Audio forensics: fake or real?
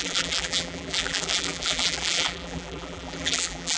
fake